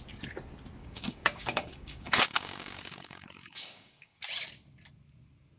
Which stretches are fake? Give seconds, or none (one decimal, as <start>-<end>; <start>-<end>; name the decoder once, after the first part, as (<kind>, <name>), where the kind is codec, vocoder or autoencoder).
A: 0.8-4.2 (codec, DAC)